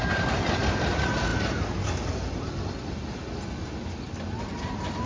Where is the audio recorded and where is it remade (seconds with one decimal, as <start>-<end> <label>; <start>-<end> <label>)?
0.0-5.1 recorded